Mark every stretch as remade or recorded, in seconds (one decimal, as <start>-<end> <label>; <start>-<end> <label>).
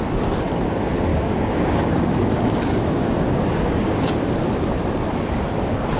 0.0-1.1 recorded; 1.1-4.2 remade; 4.2-6.0 recorded